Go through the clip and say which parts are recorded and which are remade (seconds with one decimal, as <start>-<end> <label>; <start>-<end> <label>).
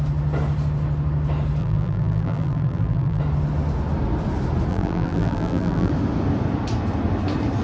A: 0.0-1.6 recorded; 1.6-3.2 remade; 3.2-4.7 recorded; 4.7-5.9 remade; 5.9-7.6 recorded